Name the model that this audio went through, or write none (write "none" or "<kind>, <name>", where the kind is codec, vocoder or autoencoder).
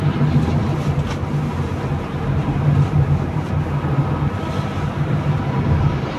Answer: none